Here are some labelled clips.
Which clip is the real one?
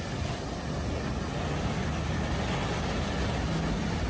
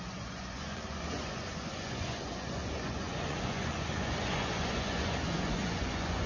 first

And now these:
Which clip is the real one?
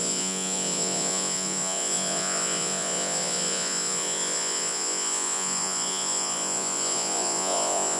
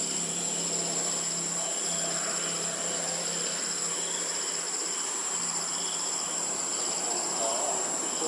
second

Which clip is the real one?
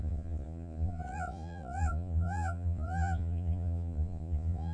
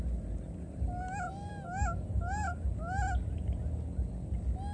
second